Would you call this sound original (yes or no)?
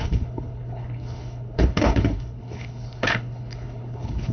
no